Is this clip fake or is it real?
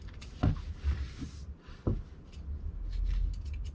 real